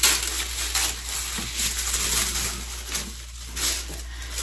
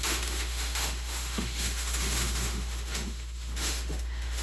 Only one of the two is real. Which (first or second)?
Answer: first